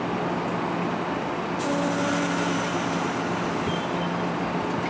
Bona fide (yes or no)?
yes